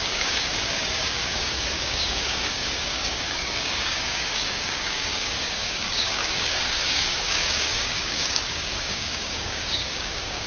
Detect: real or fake fake